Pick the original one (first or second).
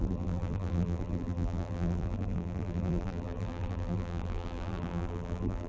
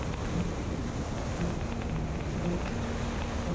second